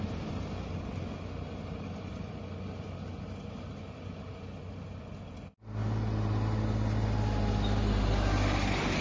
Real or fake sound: real